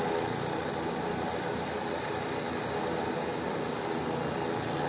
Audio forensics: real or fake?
real